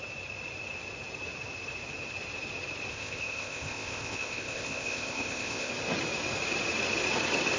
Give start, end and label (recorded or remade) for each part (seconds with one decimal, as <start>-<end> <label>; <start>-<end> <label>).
0.0-2.9 recorded; 2.9-5.7 remade; 5.7-7.6 recorded